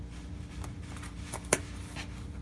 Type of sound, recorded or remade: recorded